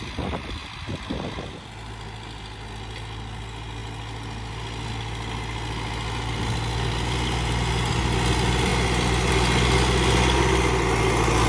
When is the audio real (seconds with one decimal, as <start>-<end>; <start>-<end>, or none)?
0.0-11.5